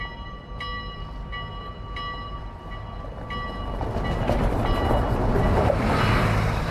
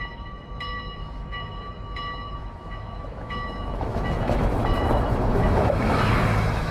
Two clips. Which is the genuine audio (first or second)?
first